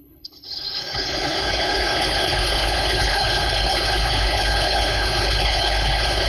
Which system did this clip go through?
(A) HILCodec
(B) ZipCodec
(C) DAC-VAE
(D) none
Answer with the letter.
A